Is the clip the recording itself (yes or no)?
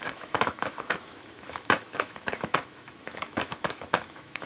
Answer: no